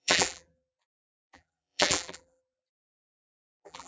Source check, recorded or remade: remade